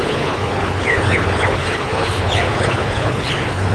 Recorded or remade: remade